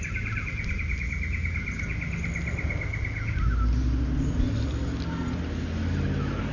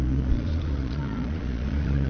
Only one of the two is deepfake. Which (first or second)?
second